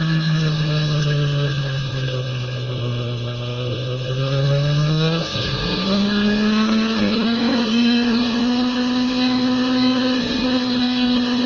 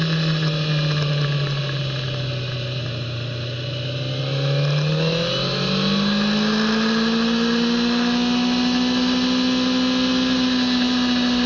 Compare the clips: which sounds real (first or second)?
second